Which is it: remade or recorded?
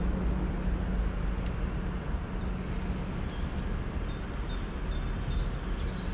recorded